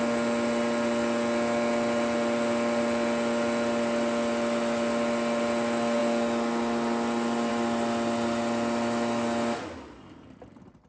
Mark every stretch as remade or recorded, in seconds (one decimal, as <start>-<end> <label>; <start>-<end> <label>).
0.0-10.9 recorded